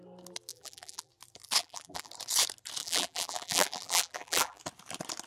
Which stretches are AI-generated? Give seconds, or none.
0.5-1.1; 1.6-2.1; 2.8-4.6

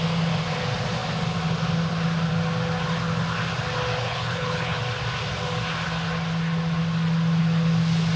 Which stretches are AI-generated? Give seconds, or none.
4.0-4.8